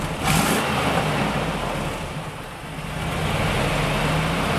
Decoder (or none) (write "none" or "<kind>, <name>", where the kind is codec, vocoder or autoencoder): none